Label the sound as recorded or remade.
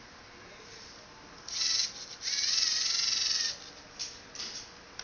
recorded